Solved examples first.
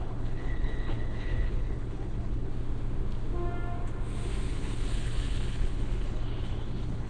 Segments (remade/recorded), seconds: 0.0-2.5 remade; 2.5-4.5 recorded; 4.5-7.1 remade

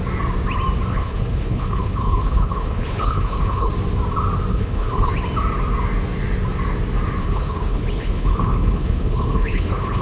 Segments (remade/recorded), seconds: 0.0-0.9 recorded; 0.9-3.7 remade; 3.7-4.5 recorded; 4.5-5.1 remade; 5.1-7.2 recorded; 7.2-10.0 remade